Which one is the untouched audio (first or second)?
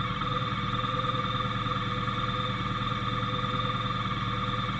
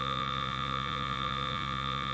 first